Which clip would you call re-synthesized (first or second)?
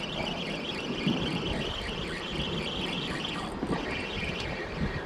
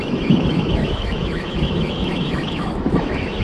second